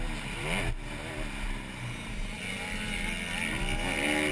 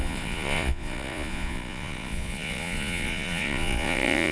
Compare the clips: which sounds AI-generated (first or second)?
second